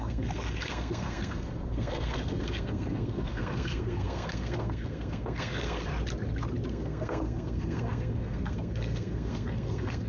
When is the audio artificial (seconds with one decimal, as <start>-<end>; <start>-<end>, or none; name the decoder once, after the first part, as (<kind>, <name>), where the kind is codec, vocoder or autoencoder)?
0.0-5.9 (codec, SNAC); 6.7-10.1